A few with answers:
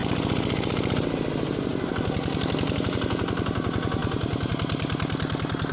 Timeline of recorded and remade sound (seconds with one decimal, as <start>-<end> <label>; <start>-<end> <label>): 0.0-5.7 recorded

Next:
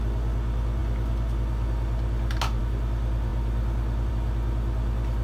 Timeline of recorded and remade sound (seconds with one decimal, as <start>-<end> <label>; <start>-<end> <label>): 0.0-5.2 recorded

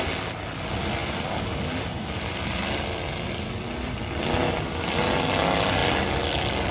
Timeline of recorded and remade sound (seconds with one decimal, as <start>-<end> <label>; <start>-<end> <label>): 0.0-6.7 recorded

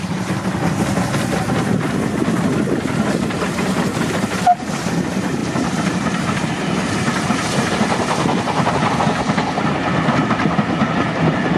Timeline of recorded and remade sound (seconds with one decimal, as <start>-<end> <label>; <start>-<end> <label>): 0.0-5.4 recorded; 5.4-8.9 remade; 8.9-11.6 recorded

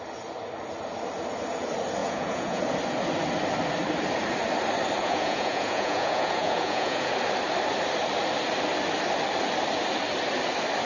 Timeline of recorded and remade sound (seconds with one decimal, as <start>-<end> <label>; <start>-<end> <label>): 0.0-2.0 recorded; 2.0-2.6 remade; 2.6-5.0 recorded; 5.0-7.1 remade; 7.1-10.9 recorded